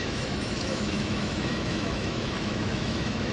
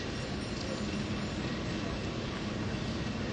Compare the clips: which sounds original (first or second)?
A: second